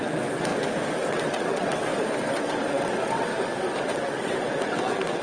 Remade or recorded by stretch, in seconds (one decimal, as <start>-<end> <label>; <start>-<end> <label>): 0.0-0.5 remade; 0.5-1.1 recorded; 1.1-1.9 remade; 1.9-2.4 recorded; 2.4-3.3 remade; 3.3-3.8 recorded; 3.8-5.2 remade